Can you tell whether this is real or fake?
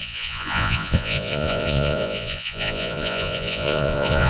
fake